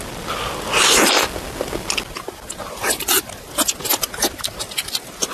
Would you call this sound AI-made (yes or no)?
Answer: yes